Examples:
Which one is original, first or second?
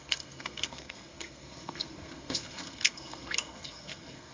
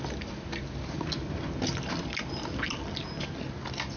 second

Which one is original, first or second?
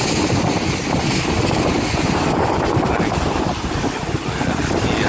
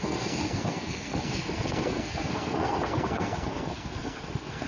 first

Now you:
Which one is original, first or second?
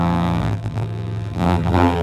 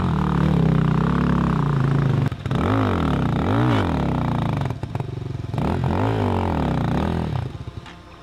second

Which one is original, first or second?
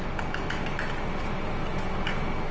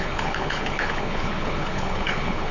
first